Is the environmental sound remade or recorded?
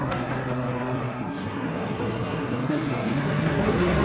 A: remade